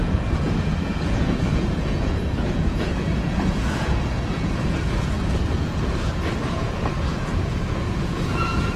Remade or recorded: remade